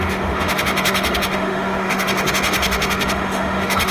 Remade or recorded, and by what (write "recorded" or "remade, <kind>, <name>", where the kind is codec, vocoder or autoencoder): remade, autoencoder, DAC-VAE